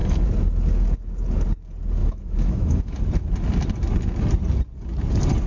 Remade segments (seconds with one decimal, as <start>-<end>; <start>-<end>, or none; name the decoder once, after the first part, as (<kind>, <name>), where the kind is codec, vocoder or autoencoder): 2.0-3.0 (autoencoder, DAC-VAE)